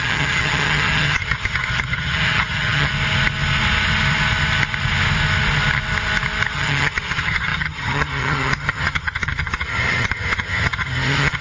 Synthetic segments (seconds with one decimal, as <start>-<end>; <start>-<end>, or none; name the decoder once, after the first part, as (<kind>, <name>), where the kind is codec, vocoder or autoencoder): 0.0-2.9 (vocoder, HiFi-GAN); 6.5-11.4